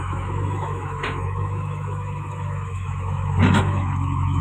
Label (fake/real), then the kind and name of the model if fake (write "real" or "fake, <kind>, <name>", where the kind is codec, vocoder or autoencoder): fake, autoencoder, DAC-VAE